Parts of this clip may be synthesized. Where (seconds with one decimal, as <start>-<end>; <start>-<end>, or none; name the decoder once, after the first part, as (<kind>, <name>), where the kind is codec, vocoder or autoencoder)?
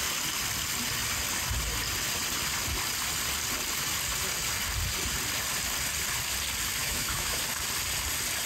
6.8-7.4 (autoencoder, DAC-VAE)